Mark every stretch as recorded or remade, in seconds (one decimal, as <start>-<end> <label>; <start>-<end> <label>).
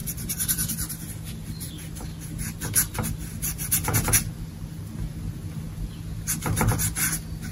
0.0-1.7 remade; 1.7-7.5 recorded